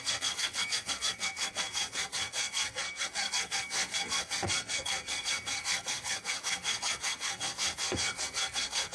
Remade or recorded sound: remade